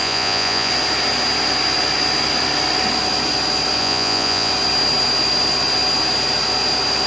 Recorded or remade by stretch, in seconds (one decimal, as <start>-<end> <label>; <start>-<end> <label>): 0.0-0.7 remade; 0.7-3.8 recorded; 3.8-4.5 remade; 4.5-7.1 recorded